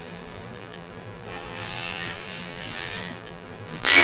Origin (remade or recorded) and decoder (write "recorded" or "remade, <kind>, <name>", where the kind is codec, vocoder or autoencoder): remade, vocoder, BigVGAN v2